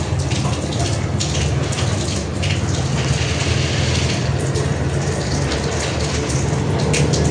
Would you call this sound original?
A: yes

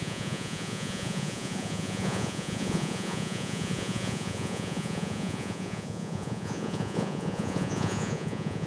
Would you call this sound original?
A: no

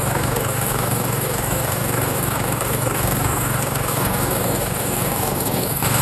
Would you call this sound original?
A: no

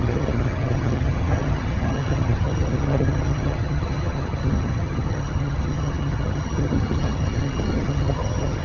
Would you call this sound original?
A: no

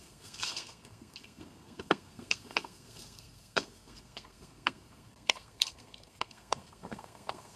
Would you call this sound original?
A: no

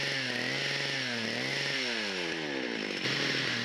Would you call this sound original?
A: yes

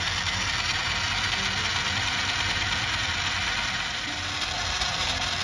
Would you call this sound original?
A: yes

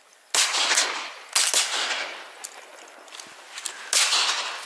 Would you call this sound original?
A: yes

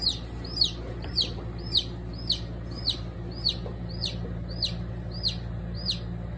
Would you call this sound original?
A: yes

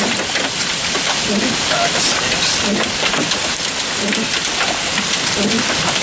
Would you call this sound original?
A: yes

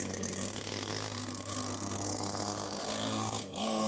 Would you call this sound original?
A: no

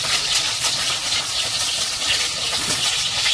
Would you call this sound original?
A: no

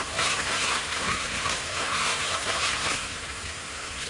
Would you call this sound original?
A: no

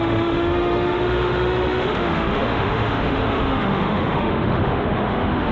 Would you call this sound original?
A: no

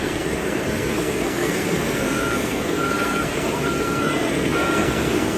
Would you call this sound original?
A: no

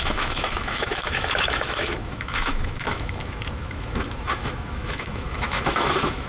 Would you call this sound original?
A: no